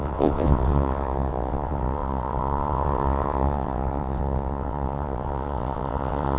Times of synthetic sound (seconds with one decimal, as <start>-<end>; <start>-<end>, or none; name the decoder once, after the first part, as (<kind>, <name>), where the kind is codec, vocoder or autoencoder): 0.0-6.4 (vocoder, WaveNeXt)